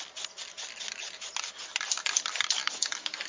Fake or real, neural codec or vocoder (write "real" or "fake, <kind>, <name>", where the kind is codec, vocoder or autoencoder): real